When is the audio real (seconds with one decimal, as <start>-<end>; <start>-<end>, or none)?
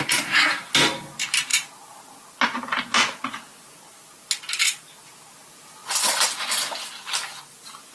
0.0-7.9